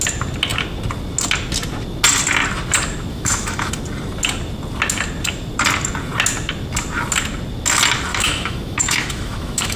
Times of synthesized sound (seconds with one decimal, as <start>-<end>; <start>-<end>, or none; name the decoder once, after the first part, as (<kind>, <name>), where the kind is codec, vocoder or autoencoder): 3.1-3.7 (autoencoder, DAC-VAE); 8.1-9.8